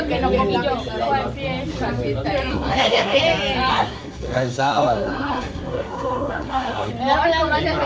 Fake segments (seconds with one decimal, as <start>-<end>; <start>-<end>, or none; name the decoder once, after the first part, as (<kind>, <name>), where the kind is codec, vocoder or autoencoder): 2.5-3.2 (codec, SNAC); 3.7-6.9